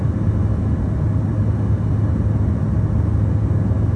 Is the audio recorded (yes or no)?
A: yes